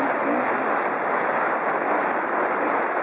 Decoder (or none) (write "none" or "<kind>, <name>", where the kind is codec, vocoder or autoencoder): none